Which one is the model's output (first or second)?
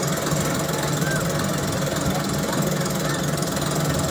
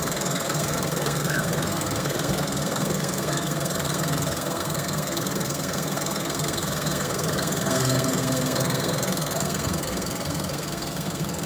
second